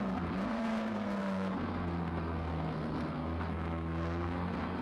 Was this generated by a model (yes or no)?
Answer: yes